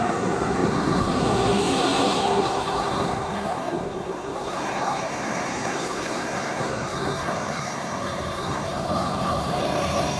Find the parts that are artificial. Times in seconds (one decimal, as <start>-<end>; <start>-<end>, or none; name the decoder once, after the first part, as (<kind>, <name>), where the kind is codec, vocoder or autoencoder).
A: 0.0-10.2 (codec, SNAC)